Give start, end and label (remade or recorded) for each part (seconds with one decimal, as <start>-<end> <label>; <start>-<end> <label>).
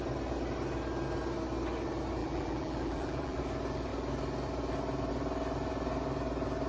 0.0-2.2 recorded; 2.2-3.4 remade; 3.4-6.7 recorded